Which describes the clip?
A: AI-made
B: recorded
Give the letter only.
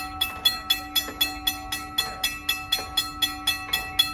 B